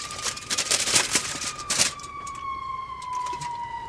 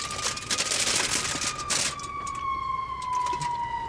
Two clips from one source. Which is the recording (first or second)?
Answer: second